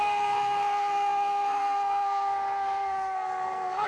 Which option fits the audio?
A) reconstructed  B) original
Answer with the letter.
A